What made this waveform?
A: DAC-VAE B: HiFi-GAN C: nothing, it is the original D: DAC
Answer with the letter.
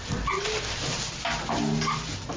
C